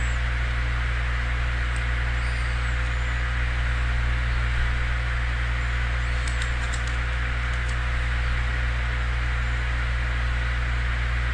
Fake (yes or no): no